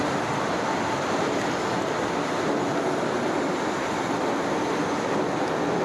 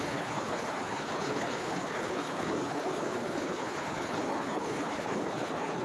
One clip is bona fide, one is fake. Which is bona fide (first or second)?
first